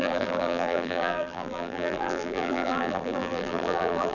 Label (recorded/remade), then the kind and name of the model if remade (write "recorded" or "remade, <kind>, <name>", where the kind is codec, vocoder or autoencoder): remade, vocoder, BigVGAN v2